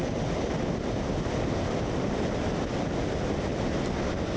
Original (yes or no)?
yes